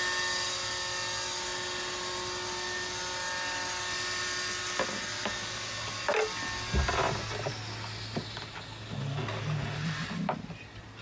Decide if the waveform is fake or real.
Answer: real